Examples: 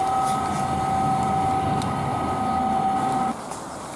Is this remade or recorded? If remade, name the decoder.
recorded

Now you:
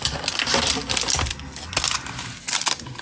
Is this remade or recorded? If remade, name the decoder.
recorded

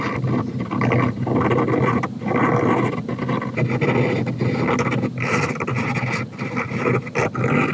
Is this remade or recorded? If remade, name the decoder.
recorded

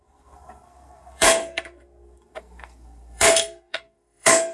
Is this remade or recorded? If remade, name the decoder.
remade, codec, SNAC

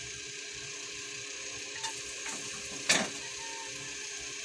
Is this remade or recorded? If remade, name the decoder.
recorded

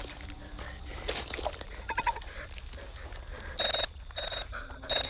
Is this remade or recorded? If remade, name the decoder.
recorded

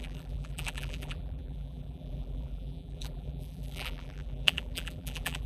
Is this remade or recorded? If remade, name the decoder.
remade, vocoder, BigVGAN v2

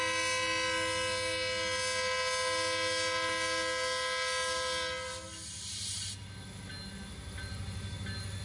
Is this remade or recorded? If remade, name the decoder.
recorded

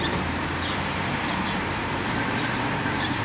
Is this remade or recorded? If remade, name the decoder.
remade, vocoder, BigVGAN v2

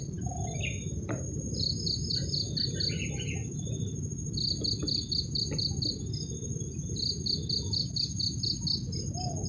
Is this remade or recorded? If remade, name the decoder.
recorded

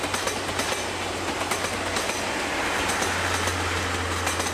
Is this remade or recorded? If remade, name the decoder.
recorded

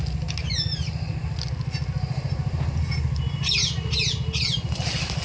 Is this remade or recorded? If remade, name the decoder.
recorded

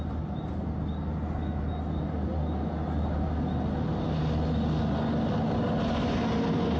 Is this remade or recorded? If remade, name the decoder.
recorded